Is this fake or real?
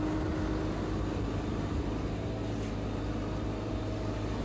real